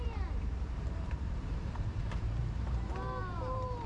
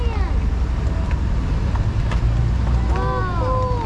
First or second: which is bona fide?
second